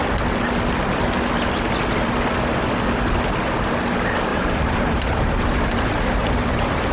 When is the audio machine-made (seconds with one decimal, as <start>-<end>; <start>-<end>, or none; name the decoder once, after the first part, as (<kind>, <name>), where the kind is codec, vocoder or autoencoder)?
4.3-6.9 (vocoder, BigVGAN v2)